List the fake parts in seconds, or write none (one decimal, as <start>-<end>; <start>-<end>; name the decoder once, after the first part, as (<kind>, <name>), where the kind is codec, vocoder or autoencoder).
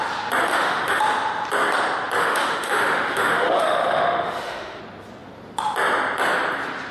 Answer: 0.5-1.0 (autoencoder, DAC-VAE); 2.2-4.8